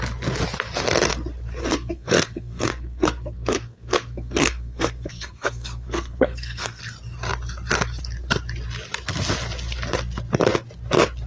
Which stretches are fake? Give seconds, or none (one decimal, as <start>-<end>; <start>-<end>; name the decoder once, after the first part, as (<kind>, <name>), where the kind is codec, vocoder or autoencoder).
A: 1.6-6.8 (codec, SNAC)